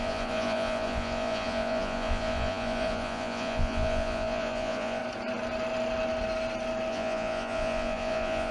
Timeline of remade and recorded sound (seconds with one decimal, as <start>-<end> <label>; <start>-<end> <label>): 0.0-5.0 remade; 5.0-6.9 recorded; 6.9-8.5 remade